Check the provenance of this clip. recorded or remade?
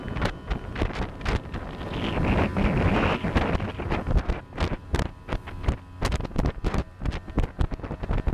recorded